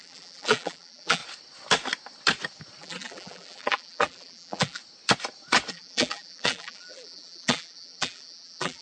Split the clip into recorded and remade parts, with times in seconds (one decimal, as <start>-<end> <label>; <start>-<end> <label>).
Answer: 0.0-1.2 remade; 1.2-2.8 recorded; 2.8-4.8 remade; 4.8-5.7 recorded; 5.7-8.8 remade